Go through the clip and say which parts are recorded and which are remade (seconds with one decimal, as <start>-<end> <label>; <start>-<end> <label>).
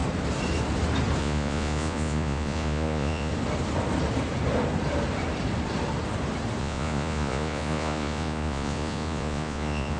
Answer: 0.0-1.2 recorded; 1.2-3.3 remade; 3.3-6.6 recorded; 6.6-10.0 remade